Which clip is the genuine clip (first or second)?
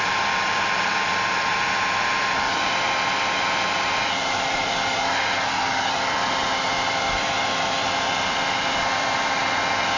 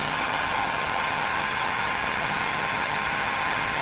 first